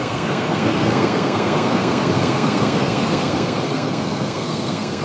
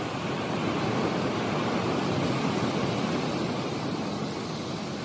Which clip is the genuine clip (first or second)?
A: second